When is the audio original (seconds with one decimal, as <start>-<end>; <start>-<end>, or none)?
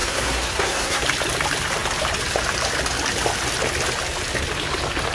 1.0-5.1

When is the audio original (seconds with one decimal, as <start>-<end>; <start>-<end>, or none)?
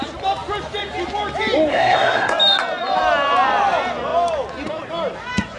0.0-1.7; 2.3-5.6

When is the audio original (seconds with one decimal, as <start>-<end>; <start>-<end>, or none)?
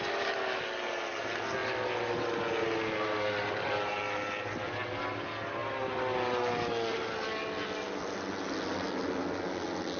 0.0-10.0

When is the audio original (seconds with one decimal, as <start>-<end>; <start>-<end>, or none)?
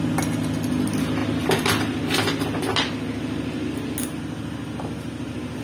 0.0-5.6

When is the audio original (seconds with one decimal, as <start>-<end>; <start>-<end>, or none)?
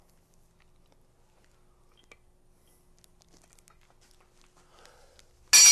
0.0-5.7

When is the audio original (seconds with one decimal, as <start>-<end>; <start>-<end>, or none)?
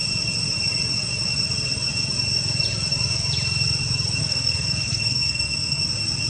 0.0-4.2; 5.8-6.3